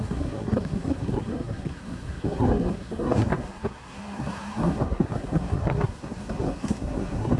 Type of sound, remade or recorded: remade